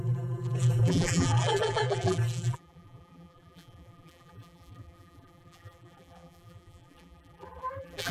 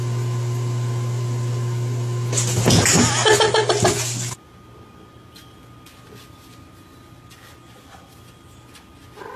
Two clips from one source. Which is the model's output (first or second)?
first